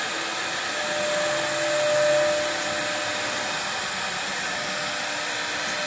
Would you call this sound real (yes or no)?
yes